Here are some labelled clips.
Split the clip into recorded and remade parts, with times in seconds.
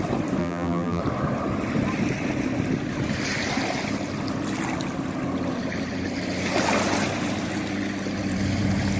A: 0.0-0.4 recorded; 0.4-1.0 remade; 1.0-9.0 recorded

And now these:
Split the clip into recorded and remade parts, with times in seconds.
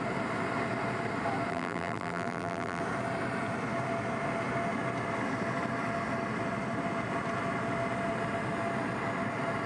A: 0.0-1.5 recorded; 1.5-2.8 remade; 2.8-9.7 recorded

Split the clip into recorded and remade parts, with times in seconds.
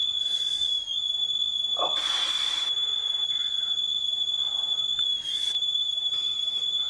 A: 0.0-2.5 recorded; 2.5-2.9 remade; 2.9-5.5 recorded; 5.5-6.9 remade